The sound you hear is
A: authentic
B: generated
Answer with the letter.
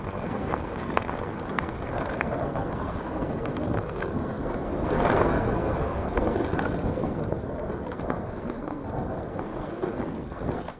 B